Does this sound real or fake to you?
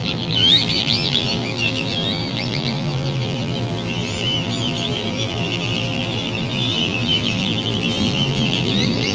fake